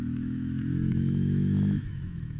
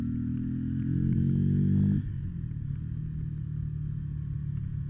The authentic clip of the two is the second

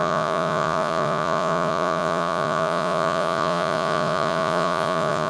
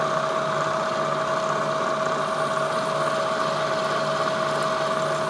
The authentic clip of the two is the second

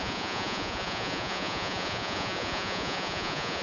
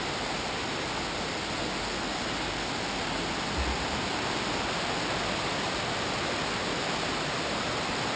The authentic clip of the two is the second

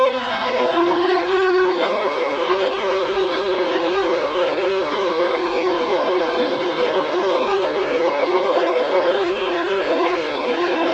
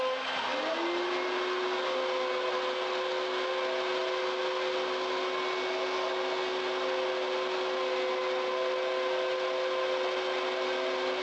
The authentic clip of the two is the second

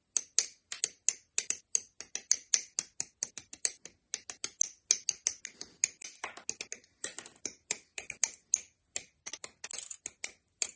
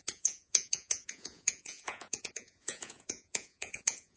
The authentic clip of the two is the first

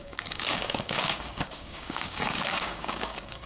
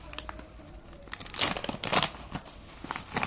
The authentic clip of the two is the second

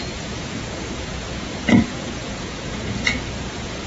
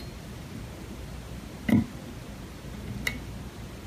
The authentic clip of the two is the second